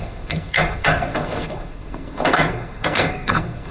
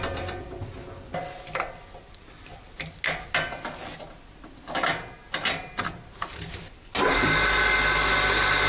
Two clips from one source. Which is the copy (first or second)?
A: first